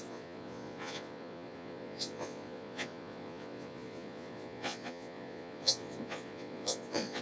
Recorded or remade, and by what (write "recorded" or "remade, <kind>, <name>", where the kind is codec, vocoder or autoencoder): remade, vocoder, Vocos